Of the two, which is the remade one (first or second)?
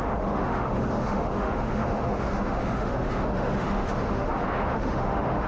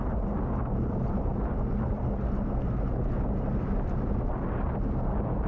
first